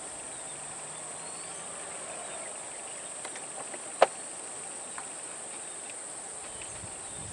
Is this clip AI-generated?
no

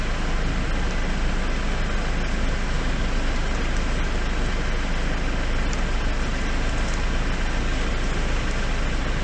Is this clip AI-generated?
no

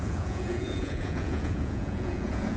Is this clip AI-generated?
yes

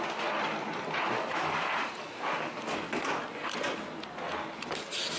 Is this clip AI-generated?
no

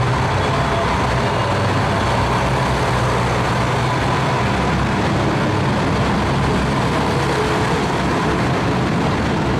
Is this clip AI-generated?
no